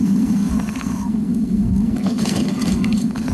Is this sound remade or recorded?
remade